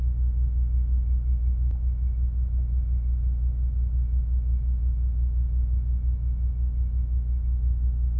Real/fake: real